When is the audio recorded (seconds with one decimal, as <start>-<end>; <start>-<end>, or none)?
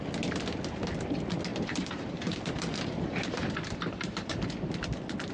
0.0-1.5; 4.7-5.3